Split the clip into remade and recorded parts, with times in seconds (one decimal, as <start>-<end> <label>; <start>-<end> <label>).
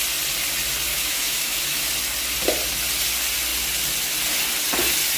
0.0-0.9 recorded; 0.9-1.9 remade; 1.9-5.2 recorded